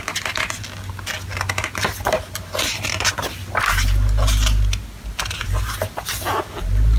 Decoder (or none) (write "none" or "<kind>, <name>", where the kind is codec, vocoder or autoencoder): none